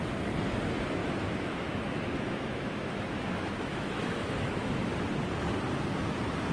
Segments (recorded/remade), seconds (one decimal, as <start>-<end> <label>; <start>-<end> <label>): 0.0-1.0 recorded; 1.0-4.9 remade; 4.9-6.5 recorded